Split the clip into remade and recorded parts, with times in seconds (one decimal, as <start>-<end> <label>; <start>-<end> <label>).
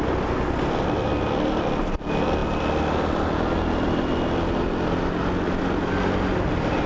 0.0-6.9 recorded